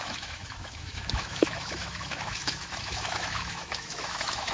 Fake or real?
fake